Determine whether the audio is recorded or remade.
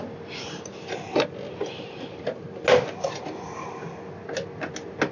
recorded